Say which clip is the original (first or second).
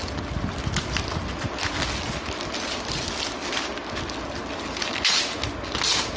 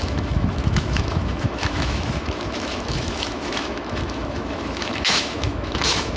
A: first